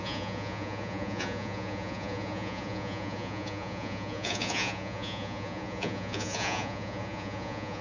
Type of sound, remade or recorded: remade